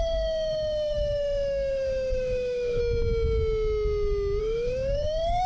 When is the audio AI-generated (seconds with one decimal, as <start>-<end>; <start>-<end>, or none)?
0.0-2.8; 4.4-5.5

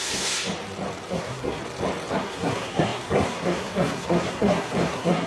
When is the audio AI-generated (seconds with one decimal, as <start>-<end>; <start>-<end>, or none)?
0.0-0.4; 1.1-1.6; 2.1-5.3

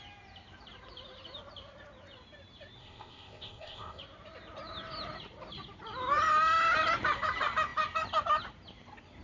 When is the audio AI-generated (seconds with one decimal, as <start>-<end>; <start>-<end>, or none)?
2.8-4.0

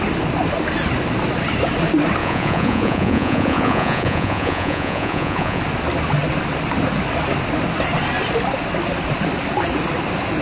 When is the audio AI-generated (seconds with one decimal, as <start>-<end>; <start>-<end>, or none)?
2.2-5.6

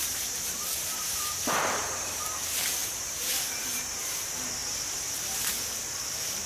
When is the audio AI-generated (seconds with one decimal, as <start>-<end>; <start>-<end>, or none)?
0.0-6.5

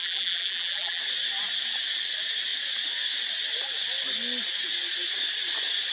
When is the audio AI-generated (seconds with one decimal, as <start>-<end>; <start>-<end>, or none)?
0.0-1.0